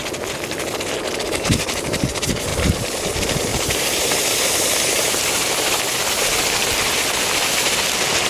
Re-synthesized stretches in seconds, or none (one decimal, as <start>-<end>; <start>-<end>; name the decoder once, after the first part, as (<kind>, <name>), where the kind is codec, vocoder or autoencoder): 2.5-3.1 (vocoder, BigVGAN v2); 3.5-5.3